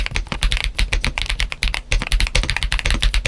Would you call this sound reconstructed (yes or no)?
no